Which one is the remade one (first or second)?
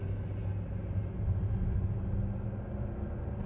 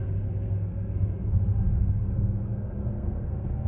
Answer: second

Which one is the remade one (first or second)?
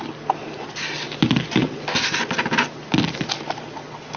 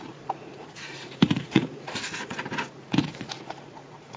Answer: second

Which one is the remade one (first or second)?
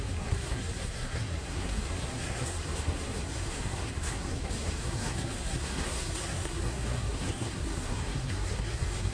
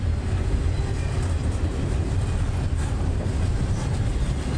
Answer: first